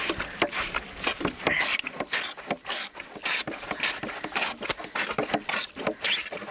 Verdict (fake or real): real